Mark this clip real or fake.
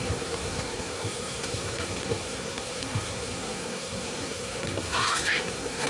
fake